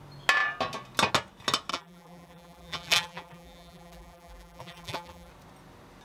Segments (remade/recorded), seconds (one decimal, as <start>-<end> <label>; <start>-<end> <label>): 0.0-1.7 recorded; 1.7-5.3 remade; 5.3-6.0 recorded